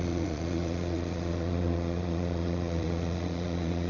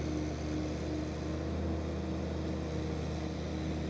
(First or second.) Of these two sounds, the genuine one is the second